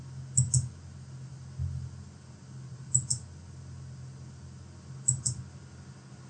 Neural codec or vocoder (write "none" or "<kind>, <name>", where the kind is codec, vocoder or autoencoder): none